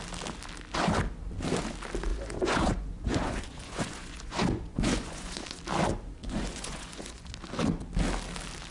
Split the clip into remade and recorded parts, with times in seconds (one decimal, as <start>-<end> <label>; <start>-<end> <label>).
0.0-2.1 recorded; 2.1-5.6 remade; 5.6-6.2 recorded; 6.2-7.3 remade; 7.3-8.7 recorded